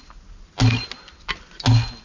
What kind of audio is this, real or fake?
real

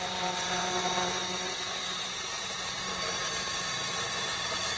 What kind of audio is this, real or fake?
fake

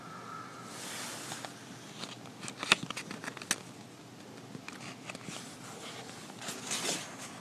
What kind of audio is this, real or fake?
real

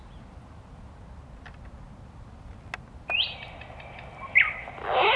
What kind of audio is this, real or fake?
real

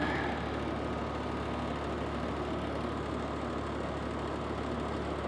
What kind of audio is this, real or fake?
real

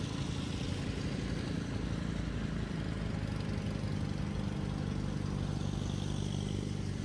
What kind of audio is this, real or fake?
real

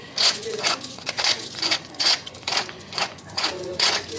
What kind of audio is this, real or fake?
fake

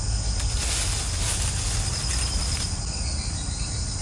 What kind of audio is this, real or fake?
real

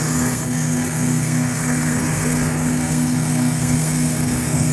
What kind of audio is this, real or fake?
fake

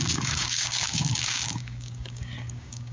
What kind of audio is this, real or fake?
fake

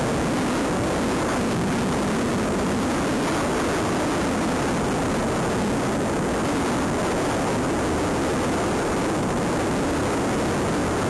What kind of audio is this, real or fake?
real